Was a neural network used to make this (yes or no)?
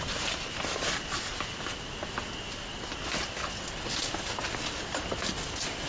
no